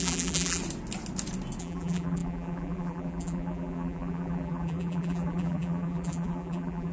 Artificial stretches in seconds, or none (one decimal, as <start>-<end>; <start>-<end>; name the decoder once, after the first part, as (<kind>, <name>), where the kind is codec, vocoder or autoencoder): 0.0-0.6 (vocoder, BigVGAN v2); 1.6-6.9